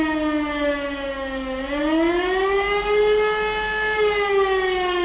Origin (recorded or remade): recorded